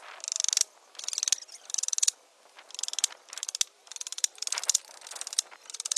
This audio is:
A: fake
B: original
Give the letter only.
B